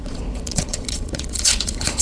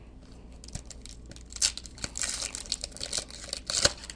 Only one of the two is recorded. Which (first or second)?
second